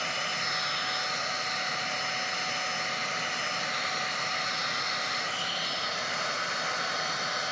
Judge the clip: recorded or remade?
recorded